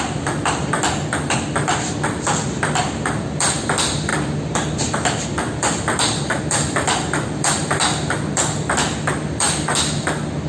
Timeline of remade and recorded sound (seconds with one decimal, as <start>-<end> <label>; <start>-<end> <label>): 0.0-10.5 recorded